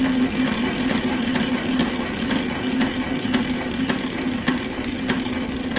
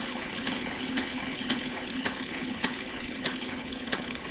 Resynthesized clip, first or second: second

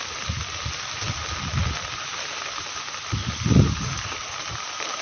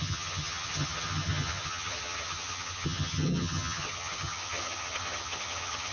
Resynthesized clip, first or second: second